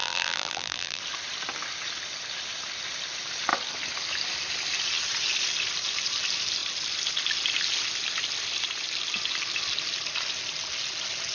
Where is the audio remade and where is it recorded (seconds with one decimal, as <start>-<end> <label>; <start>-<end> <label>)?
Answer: 0.0-1.0 remade; 1.0-11.3 recorded